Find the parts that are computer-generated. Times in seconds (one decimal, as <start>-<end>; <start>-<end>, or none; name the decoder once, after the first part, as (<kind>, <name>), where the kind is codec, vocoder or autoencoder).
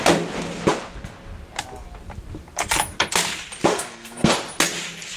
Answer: 3.7-4.3 (codec, SNAC)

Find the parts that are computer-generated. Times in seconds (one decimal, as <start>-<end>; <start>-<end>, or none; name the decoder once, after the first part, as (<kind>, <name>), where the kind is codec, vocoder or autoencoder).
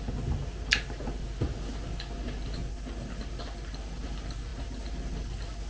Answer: none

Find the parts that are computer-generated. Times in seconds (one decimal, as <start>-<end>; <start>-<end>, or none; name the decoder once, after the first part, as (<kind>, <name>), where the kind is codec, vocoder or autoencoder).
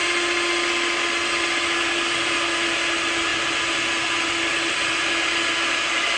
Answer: none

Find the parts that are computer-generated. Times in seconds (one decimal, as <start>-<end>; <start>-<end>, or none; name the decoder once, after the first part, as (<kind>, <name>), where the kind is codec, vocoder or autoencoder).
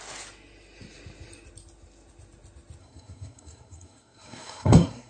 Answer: 2.8-5.1 (codec, SNAC)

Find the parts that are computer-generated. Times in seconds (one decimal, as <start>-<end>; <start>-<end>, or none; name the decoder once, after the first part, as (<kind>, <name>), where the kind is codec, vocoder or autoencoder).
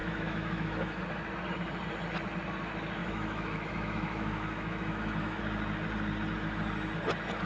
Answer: 0.0-1.0 (autoencoder, DAC-VAE); 3.0-5.4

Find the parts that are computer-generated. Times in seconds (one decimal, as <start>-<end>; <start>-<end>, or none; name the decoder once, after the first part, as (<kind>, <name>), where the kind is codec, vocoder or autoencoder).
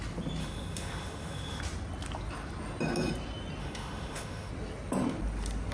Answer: 0.4-1.6 (autoencoder, DAC-VAE); 3.6-4.5